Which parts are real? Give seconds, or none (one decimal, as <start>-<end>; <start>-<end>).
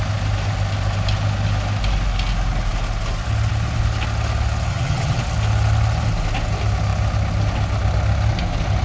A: 0.0-4.7; 5.2-8.8